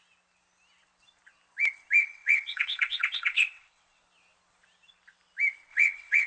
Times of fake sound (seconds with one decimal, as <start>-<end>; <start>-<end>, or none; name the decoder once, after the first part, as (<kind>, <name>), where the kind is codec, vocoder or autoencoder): 2.0-4.0 (vocoder, WaveNeXt); 5.7-6.3